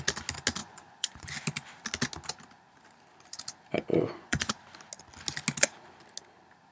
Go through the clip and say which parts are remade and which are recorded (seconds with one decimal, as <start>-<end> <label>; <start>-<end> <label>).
0.0-0.6 recorded; 0.6-1.3 remade; 1.3-3.9 recorded; 3.9-4.5 remade; 4.5-6.7 recorded